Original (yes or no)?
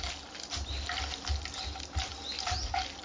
yes